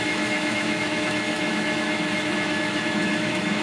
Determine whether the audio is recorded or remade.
remade